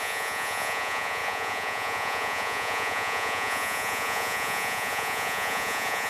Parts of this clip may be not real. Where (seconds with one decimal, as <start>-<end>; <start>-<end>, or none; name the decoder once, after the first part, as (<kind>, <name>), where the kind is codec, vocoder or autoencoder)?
0.0-6.1 (vocoder, Vocos)